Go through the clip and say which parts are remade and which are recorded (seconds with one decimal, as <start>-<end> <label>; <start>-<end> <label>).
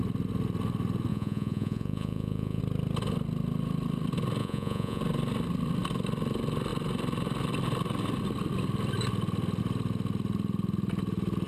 0.0-1.1 recorded; 1.1-2.6 remade; 2.6-4.4 recorded; 4.4-5.0 remade; 5.0-11.5 recorded